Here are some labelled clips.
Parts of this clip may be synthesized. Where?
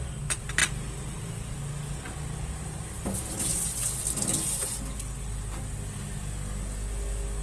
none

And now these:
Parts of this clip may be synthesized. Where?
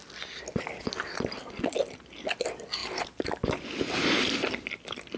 none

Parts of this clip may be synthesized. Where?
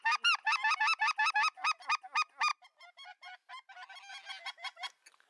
none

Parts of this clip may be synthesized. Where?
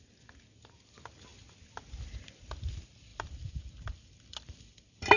3.1-5.2 (vocoder, BigVGAN v2)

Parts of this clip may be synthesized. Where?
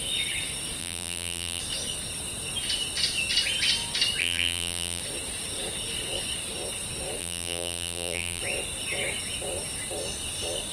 0.8-1.6 (vocoder, BigVGAN v2); 4.2-5.0; 7.2-8.4